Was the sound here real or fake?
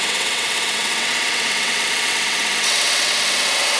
fake